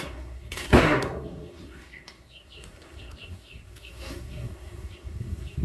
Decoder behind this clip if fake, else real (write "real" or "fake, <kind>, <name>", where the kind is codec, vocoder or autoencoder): fake, codec, SNAC